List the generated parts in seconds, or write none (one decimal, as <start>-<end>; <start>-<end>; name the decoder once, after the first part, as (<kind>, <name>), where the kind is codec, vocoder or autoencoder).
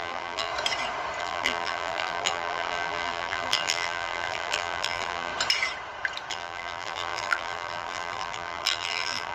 0.0-0.5 (vocoder, BigVGAN v2); 1.2-5.3; 6.3-9.3